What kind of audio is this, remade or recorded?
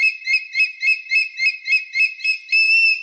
recorded